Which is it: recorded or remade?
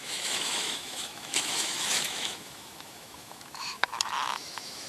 remade